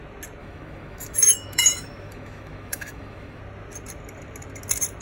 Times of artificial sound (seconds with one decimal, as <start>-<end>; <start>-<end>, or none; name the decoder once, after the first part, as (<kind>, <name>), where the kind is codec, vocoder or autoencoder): 0.4-3.4 (autoencoder, DAC-VAE)